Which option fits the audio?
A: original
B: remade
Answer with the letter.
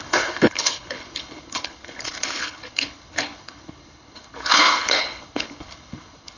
B